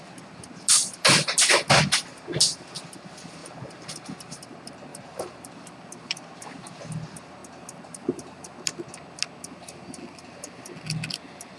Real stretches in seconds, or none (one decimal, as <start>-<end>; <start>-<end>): 0.0-3.4; 4.4-4.9; 5.5-11.6